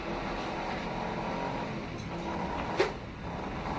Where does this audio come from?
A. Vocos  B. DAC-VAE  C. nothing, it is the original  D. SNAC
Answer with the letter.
C